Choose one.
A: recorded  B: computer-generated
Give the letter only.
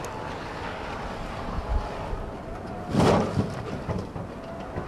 A